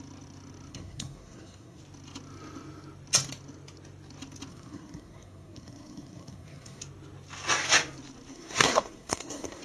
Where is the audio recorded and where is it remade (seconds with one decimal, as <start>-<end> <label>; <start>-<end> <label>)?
0.0-0.7 recorded; 0.7-1.8 remade; 1.8-4.5 recorded; 4.5-6.8 remade; 6.8-8.3 recorded; 8.3-9.6 remade